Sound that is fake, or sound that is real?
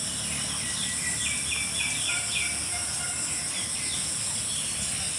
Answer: real